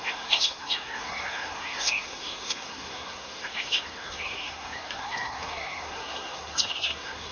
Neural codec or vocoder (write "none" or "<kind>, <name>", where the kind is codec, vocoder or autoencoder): codec, SNAC